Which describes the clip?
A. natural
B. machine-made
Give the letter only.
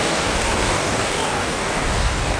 B